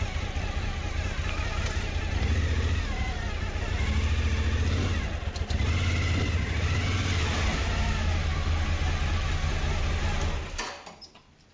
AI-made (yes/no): no